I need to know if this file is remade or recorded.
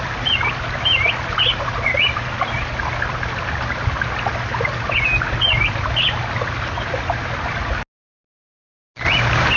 recorded